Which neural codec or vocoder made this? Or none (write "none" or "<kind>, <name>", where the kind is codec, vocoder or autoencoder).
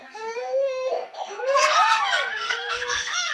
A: codec, SNAC